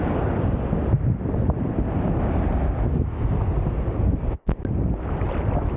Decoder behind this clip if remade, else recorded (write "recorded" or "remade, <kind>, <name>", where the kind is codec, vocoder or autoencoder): recorded